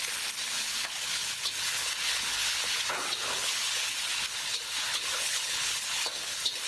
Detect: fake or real fake